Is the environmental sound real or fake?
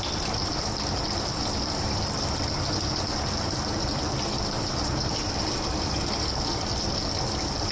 real